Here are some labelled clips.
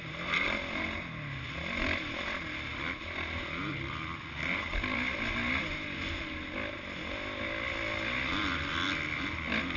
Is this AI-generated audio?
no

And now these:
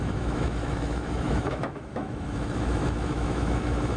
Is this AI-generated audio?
yes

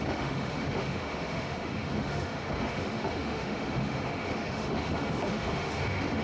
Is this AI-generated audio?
yes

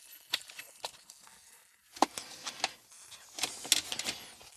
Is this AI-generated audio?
no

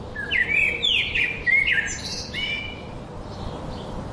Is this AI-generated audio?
no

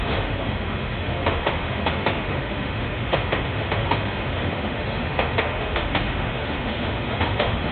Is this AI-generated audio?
yes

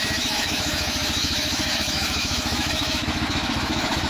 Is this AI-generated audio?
yes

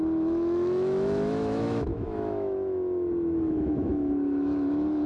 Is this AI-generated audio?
yes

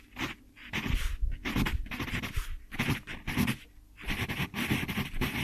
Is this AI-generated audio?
no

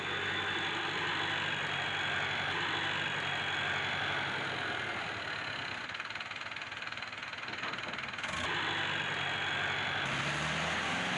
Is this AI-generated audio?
no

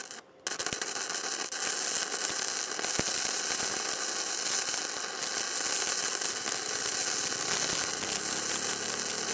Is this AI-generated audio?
no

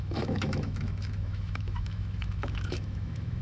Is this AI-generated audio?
yes